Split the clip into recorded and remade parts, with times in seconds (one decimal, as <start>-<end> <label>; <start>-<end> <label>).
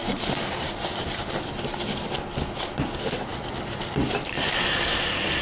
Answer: 0.0-1.5 remade; 1.5-5.4 recorded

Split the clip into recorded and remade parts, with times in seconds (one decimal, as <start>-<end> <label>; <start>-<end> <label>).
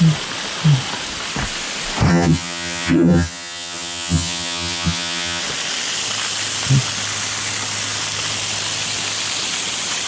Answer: 0.0-2.1 recorded; 2.1-5.4 remade; 5.4-10.1 recorded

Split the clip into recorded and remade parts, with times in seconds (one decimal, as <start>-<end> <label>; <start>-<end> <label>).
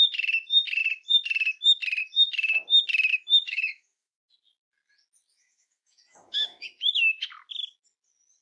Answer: 0.0-3.1 recorded; 3.1-4.3 remade; 4.3-5.3 recorded; 5.3-7.3 remade; 7.3-8.4 recorded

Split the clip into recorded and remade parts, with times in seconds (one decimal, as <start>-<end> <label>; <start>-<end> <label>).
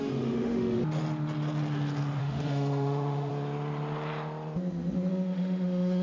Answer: 0.0-0.8 remade; 0.8-2.2 recorded; 2.2-3.3 remade; 3.3-5.1 recorded; 5.1-6.0 remade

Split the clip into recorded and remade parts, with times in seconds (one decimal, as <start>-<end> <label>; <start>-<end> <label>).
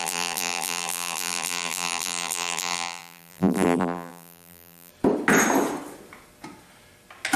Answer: 0.0-4.9 remade; 4.9-7.4 recorded